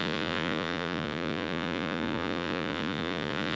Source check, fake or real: fake